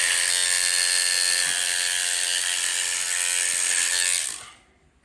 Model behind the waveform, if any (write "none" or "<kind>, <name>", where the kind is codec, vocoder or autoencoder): none